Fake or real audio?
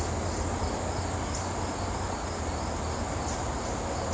real